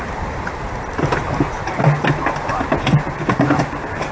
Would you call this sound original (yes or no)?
yes